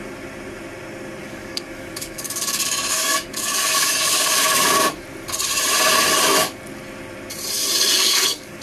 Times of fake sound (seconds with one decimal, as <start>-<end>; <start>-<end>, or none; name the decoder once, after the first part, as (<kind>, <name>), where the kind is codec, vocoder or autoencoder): 1.2-4.9 (codec, DAC); 8.0-8.6